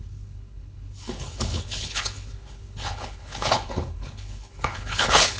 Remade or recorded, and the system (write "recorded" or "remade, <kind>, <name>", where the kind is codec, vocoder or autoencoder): remade, codec, HILCodec